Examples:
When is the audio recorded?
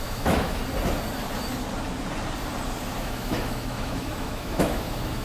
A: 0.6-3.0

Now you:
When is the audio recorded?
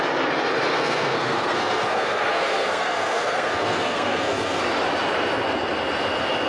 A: 0.0-0.7; 4.6-6.5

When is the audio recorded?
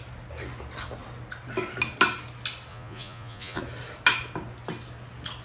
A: 0.0-2.7; 3.6-5.4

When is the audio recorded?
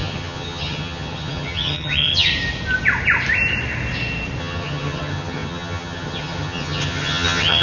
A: 2.3-4.4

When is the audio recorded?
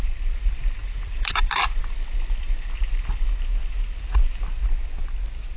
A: 0.0-0.8; 1.8-5.6